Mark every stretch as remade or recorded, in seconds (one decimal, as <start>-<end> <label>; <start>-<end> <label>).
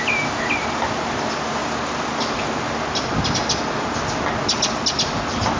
0.0-5.6 recorded